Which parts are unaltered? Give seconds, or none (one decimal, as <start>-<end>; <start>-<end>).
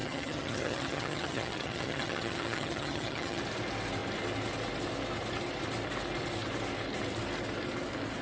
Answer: 3.4-8.2